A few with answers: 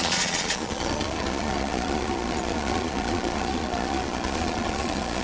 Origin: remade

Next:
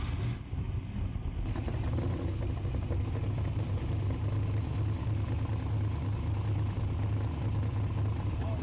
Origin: recorded